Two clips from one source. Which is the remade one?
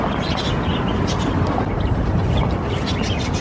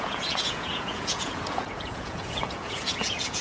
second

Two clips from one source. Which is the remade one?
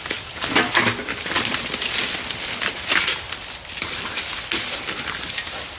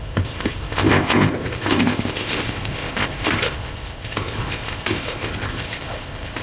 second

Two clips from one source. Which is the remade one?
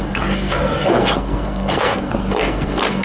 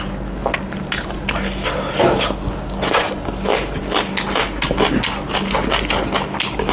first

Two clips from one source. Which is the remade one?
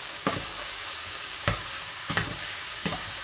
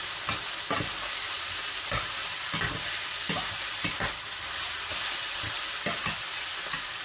first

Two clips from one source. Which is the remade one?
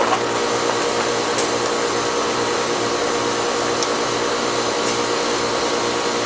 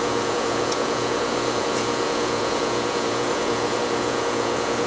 second